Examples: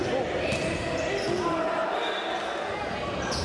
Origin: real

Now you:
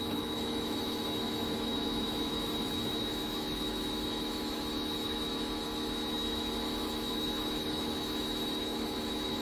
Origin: fake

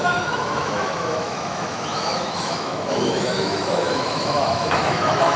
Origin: fake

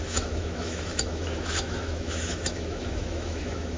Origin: fake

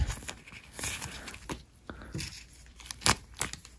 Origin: real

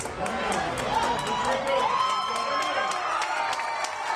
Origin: real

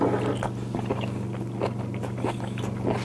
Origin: real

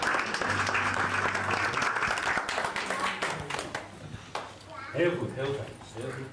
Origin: real